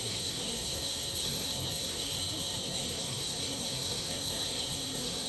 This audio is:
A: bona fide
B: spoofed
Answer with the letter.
B